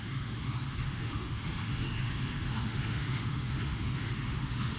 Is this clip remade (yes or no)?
yes